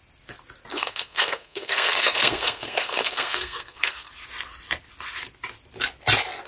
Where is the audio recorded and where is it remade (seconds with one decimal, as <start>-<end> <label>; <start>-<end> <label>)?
0.0-0.7 recorded; 0.7-4.1 remade; 4.1-6.5 recorded